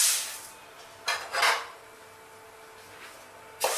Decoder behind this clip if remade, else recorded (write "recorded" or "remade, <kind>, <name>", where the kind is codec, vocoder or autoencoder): recorded